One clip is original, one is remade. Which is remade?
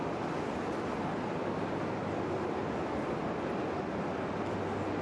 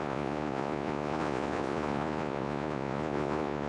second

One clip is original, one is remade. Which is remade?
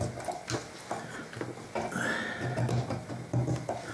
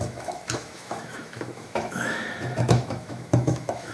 second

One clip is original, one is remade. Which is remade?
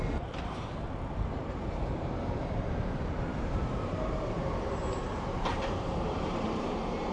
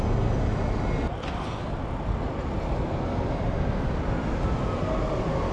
first